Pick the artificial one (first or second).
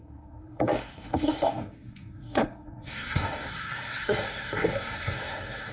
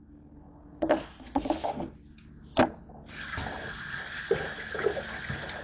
first